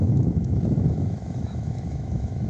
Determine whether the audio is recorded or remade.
remade